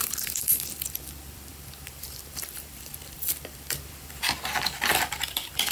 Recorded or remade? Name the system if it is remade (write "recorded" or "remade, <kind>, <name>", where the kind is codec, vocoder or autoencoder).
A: remade, vocoder, BigVGAN v2